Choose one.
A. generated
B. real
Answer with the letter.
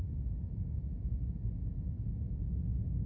B